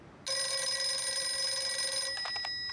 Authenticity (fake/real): real